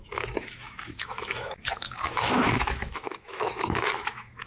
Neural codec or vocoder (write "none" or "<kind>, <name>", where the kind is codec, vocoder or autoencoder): autoencoder, DAC-VAE